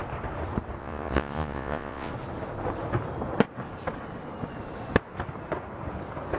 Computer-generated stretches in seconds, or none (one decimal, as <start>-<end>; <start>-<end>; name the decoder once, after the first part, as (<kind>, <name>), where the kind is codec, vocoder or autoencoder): 0.8-2.1 (vocoder, Vocos)